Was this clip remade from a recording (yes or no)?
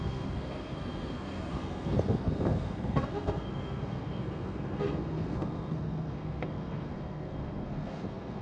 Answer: yes